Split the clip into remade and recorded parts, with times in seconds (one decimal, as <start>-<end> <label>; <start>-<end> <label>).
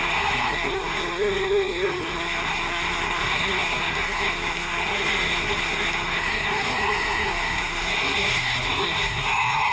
0.0-9.7 remade